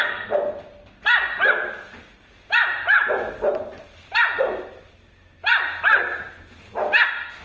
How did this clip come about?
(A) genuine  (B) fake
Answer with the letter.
A